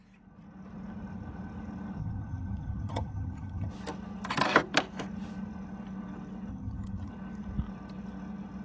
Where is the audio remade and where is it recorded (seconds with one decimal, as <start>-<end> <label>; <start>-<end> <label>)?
0.0-2.0 recorded; 2.0-3.7 remade; 3.7-6.5 recorded; 6.5-7.1 remade; 7.1-8.6 recorded